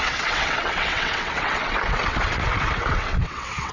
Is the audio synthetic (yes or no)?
yes